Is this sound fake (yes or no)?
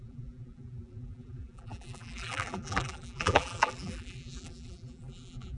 yes